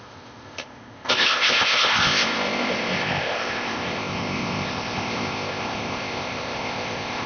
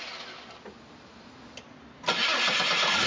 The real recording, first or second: second